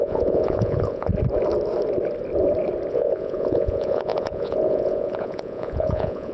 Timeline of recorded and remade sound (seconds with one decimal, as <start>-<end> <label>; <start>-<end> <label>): 0.0-1.1 remade; 1.1-2.9 recorded; 2.9-6.3 remade